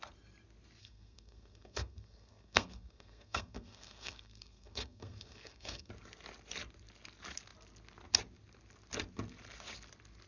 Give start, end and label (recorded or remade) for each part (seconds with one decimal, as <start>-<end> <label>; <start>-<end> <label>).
0.0-0.8 recorded; 0.8-5.9 remade; 5.9-10.3 recorded